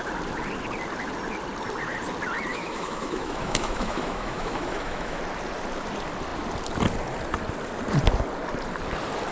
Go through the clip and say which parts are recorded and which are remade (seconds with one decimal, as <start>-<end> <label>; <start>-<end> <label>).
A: 0.0-2.5 recorded; 2.5-5.2 remade; 5.2-9.3 recorded